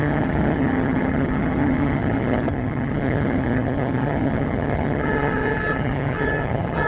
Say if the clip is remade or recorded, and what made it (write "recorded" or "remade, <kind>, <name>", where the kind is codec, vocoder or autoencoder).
remade, vocoder, HiFi-GAN